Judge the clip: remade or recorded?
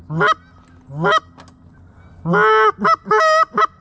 recorded